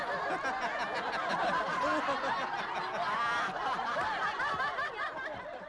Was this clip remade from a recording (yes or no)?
no